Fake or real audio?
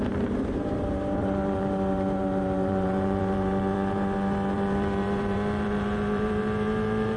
fake